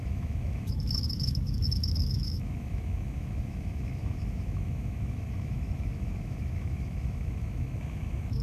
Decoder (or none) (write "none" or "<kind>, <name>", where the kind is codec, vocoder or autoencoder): autoencoder, DAC-VAE